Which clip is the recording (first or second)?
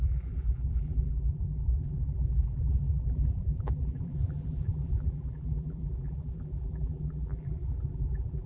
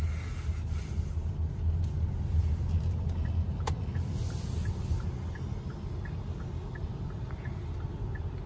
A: second